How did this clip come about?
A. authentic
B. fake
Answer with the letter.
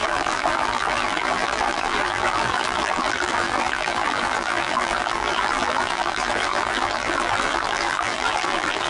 B